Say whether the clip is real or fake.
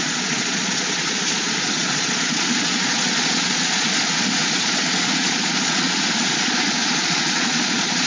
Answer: fake